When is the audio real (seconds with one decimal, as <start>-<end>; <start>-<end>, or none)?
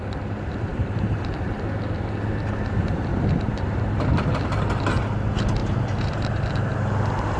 0.0-0.7; 1.2-3.1; 3.8-5.6; 6.3-7.4